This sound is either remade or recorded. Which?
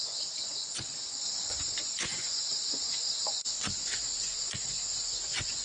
remade